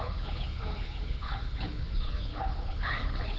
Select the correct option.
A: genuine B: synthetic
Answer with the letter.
B